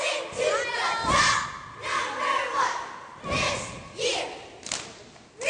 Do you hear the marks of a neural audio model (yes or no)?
no